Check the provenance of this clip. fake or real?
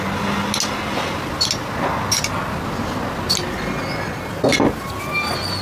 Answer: real